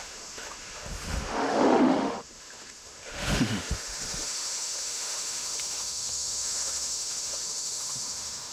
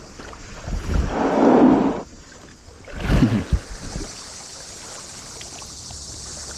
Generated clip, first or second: first